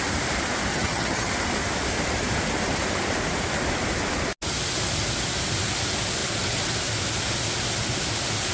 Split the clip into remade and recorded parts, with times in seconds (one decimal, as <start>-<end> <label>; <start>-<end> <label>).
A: 0.0-0.7 recorded; 0.7-1.3 remade; 1.3-8.5 recorded